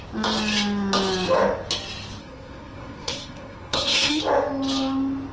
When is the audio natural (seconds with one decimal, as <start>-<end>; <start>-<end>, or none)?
0.0-2.2; 4.2-5.3